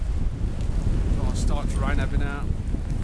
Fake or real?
real